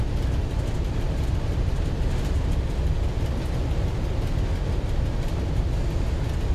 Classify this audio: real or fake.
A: real